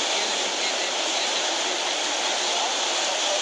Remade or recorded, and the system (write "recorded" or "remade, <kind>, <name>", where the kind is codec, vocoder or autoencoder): recorded